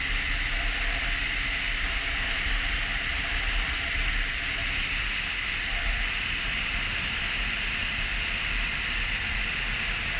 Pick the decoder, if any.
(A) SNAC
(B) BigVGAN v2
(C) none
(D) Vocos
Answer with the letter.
B